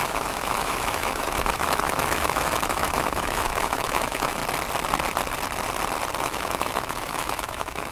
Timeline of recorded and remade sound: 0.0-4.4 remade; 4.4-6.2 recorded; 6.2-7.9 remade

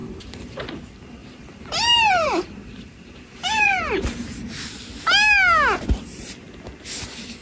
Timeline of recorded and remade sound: 0.0-0.6 remade; 0.6-1.2 recorded; 1.2-4.0 remade; 4.0-7.4 recorded

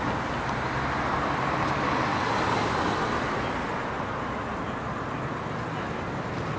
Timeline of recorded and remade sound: 0.0-6.6 recorded

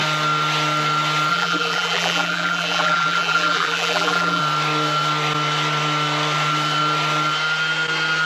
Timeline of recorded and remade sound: 0.0-1.3 recorded; 1.3-4.4 remade; 4.4-8.3 recorded

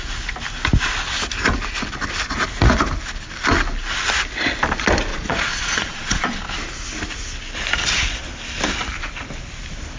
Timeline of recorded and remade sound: 0.0-5.1 recorded; 5.1-6.4 remade; 6.4-10.0 recorded

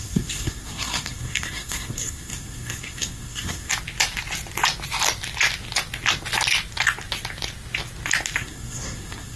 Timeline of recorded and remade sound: 0.0-3.7 remade; 3.7-8.4 recorded; 8.4-9.4 remade